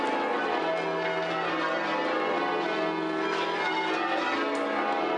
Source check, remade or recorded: recorded